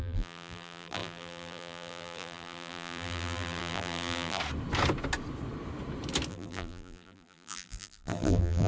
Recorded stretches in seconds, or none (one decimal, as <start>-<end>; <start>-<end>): 4.4-6.3